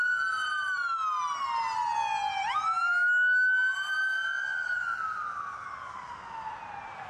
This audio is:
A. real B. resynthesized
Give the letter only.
A